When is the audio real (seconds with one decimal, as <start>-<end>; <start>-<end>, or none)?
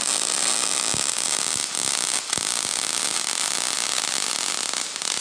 0.0-5.2